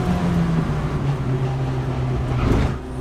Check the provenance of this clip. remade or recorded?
recorded